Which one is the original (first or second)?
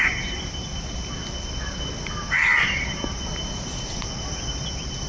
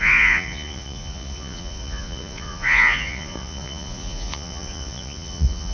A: first